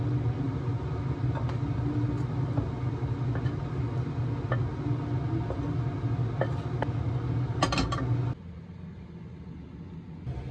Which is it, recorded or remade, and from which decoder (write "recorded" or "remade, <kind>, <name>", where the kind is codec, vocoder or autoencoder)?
recorded